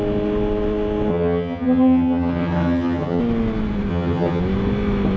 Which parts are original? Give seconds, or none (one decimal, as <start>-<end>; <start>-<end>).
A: 0.0-1.1; 3.2-3.9; 4.4-5.2